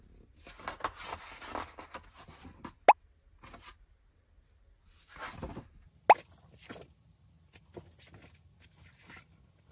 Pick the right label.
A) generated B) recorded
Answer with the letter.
B